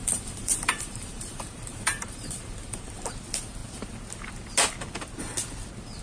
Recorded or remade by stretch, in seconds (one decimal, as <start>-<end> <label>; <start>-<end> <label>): 0.0-3.2 remade; 3.2-6.0 recorded